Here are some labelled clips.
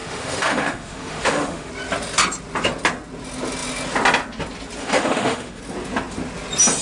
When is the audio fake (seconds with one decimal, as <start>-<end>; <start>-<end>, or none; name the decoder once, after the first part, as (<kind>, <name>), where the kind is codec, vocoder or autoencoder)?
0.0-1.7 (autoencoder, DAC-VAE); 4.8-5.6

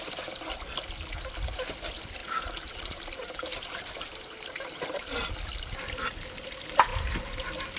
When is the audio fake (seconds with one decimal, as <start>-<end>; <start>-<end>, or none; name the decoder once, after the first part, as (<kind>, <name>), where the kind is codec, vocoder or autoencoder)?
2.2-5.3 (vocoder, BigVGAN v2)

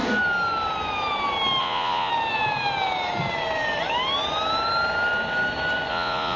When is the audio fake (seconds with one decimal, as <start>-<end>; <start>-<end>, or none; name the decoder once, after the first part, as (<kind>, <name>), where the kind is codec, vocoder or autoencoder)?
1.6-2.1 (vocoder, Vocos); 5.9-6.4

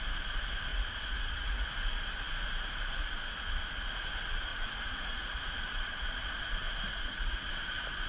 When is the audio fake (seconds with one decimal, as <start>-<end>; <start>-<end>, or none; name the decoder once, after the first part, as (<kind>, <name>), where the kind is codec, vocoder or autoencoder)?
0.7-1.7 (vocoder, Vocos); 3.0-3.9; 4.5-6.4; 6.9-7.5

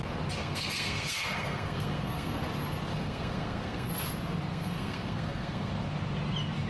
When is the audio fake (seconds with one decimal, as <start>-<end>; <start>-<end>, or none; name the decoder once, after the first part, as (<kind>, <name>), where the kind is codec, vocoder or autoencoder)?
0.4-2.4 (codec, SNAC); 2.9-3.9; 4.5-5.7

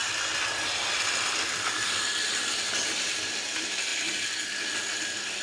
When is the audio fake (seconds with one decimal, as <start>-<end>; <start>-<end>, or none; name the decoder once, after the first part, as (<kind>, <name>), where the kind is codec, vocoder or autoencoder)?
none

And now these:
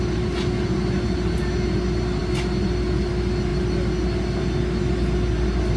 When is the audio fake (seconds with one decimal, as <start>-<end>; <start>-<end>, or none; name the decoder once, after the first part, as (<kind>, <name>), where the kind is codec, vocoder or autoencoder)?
none